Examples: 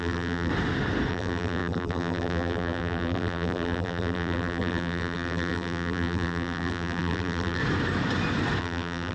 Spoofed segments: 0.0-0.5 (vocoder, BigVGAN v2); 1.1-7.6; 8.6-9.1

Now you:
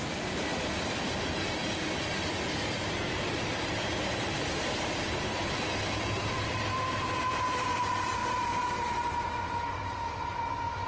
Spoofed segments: 0.0-8.2 (vocoder, BigVGAN v2); 9.8-10.9

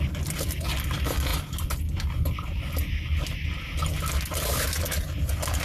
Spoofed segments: none

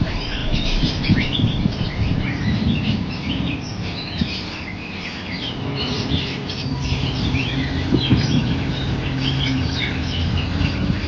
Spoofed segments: 0.0-11.1 (vocoder, BigVGAN v2)